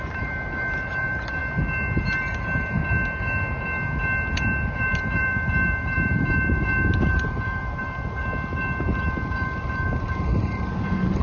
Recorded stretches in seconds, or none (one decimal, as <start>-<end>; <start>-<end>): 1.4-2.0; 2.8-4.8; 8.3-9.0